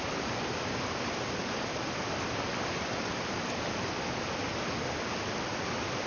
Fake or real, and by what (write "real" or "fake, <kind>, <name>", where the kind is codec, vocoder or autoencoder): real